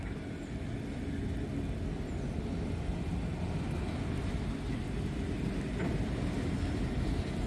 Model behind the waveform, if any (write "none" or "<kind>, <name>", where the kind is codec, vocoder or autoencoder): none